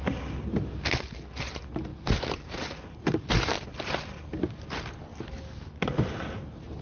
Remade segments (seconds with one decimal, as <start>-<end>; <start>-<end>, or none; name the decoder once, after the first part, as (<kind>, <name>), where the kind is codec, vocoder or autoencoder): 1.9-2.8 (vocoder, BigVGAN v2)